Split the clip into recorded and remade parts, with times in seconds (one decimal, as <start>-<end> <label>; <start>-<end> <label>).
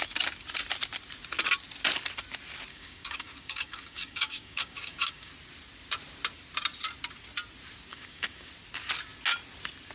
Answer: 0.0-2.7 recorded; 2.7-5.3 remade; 5.3-7.9 recorded; 7.9-8.5 remade; 8.5-9.9 recorded